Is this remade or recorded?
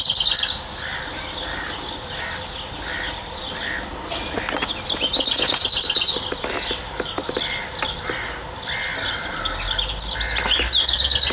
recorded